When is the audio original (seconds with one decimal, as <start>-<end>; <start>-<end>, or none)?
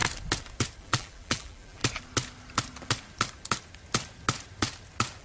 0.0-0.8; 1.8-5.2